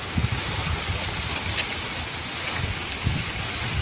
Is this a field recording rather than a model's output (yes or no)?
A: yes